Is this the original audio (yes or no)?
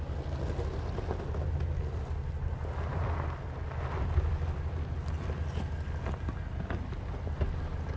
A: yes